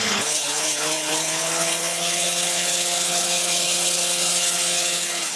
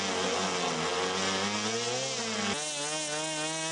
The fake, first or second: first